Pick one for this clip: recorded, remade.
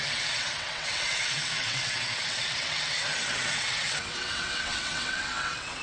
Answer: remade